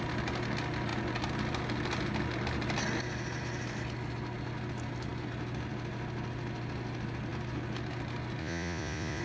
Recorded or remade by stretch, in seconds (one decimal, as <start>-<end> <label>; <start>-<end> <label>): 0.0-8.4 recorded; 8.4-9.2 remade